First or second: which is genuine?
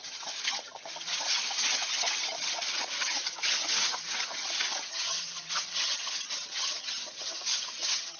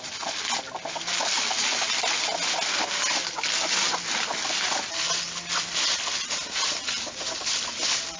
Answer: second